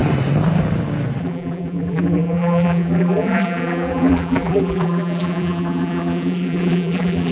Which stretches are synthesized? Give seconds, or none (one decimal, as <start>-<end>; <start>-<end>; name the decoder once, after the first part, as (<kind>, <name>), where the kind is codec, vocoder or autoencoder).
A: 1.2-7.3 (vocoder, BigVGAN v2)